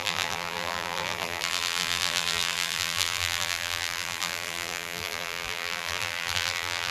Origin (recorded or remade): remade